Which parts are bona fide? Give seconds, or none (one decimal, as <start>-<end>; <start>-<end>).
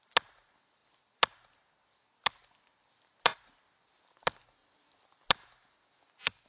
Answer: 0.0-6.5